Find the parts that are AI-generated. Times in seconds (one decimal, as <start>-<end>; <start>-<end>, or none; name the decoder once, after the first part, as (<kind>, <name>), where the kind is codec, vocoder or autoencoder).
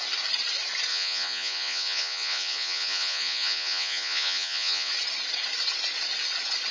0.9-4.9 (vocoder, Vocos)